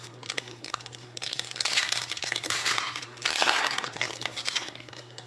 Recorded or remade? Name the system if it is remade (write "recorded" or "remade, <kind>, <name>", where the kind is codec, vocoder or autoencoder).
remade, codec, SNAC